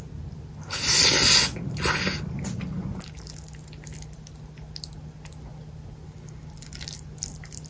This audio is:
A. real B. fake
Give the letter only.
A